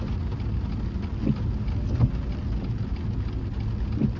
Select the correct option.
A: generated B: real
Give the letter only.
B